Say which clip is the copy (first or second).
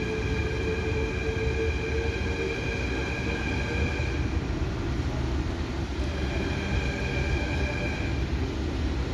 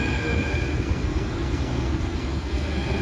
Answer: second